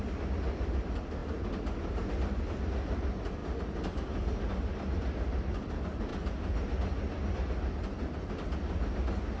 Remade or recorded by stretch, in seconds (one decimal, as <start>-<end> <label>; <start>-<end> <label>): 0.0-9.4 recorded